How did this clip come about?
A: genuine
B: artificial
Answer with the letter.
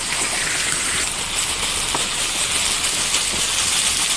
A